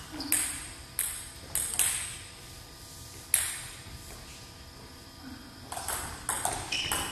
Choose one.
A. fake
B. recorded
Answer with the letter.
B